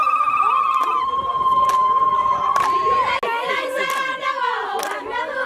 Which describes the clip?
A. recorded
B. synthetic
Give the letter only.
A